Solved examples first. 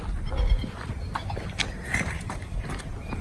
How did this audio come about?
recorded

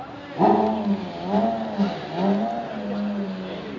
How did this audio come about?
recorded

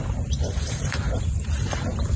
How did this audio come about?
remade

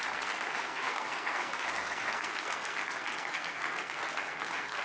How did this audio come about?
remade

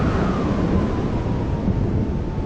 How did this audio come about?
recorded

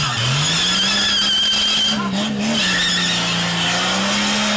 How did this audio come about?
recorded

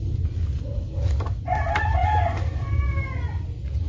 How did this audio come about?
recorded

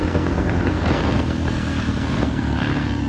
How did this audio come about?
remade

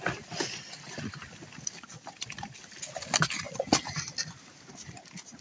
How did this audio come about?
recorded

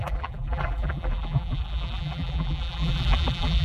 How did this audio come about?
remade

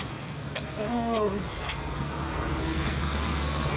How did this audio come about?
remade